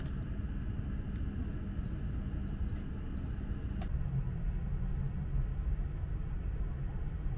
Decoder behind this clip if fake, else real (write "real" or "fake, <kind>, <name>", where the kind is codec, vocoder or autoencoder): real